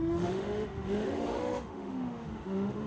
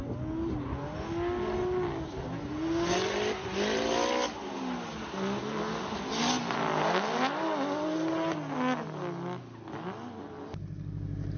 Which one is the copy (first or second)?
first